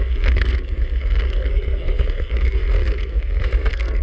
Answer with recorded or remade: remade